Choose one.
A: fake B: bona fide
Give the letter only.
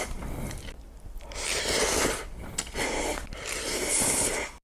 A